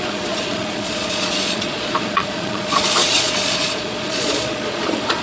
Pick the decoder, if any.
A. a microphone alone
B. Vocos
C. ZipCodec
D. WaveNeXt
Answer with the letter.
B